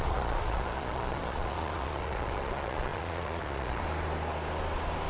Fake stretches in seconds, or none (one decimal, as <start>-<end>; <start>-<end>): 0.0-3.8